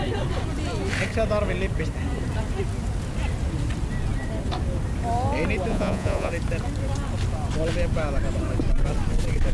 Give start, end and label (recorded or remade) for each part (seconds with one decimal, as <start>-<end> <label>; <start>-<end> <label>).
0.0-5.7 recorded; 5.7-6.3 remade; 6.3-9.5 recorded